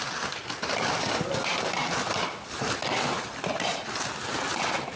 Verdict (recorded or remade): recorded